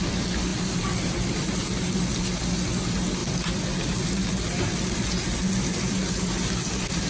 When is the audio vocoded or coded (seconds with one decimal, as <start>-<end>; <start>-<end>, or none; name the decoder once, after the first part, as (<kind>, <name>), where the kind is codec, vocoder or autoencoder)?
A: none